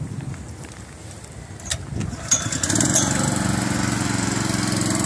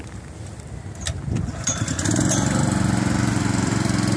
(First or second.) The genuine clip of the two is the first